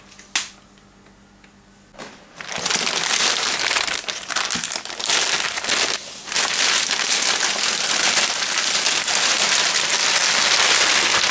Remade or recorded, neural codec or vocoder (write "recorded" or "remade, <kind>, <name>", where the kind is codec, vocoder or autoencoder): recorded